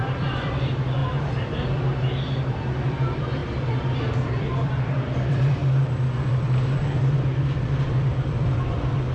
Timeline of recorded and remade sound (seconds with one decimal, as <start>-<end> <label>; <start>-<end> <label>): 0.0-1.0 remade; 1.0-2.5 recorded; 2.5-5.6 remade; 5.6-6.3 recorded; 6.3-9.1 remade